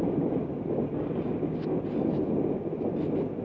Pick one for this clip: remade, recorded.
recorded